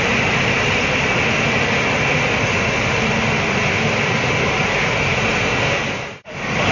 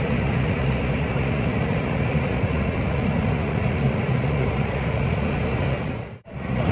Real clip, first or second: first